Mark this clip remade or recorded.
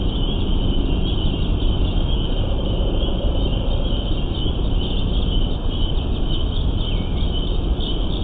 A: recorded